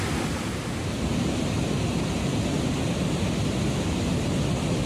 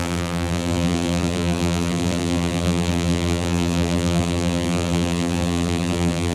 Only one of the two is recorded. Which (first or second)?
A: first